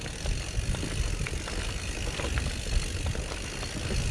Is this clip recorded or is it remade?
recorded